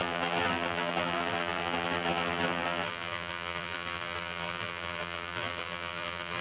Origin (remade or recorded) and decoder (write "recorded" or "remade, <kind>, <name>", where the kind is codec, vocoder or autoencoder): remade, vocoder, BigVGAN v2